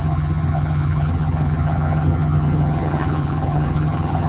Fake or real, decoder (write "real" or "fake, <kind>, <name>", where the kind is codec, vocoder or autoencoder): fake, vocoder, HiFi-GAN